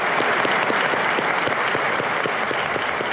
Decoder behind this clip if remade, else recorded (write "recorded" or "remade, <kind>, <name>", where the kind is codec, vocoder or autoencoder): recorded